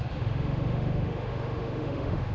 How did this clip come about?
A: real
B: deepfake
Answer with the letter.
B